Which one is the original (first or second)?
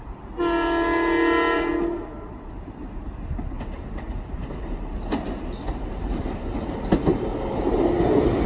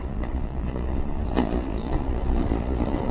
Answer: first